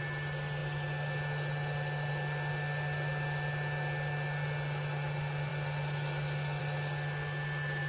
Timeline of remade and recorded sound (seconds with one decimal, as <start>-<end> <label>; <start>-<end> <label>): 0.0-7.9 recorded